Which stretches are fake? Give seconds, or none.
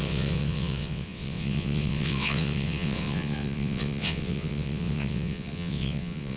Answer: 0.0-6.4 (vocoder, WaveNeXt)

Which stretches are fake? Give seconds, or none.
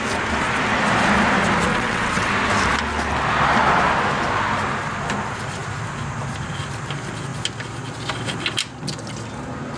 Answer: 1.7-2.3 (vocoder, WaveNeXt)